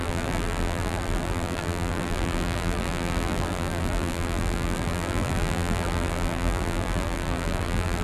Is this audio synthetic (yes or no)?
yes